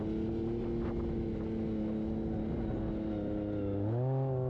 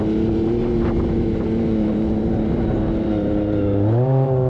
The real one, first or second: first